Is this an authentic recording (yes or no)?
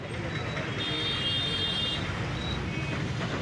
yes